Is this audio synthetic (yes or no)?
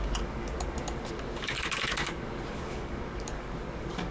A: yes